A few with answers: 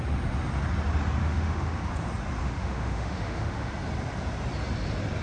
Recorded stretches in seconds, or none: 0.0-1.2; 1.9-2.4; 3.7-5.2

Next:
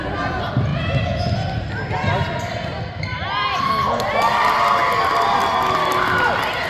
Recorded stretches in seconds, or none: 0.0-6.7

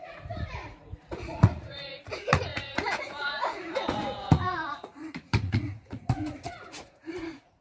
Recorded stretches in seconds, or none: none